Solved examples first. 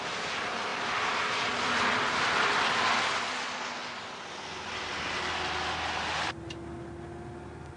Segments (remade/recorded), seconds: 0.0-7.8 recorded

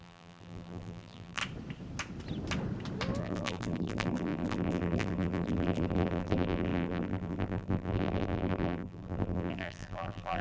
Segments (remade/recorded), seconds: 0.0-1.4 remade; 1.4-3.2 recorded; 3.2-10.4 remade